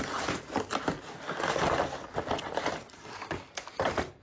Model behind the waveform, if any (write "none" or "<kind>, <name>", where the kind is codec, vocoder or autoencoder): none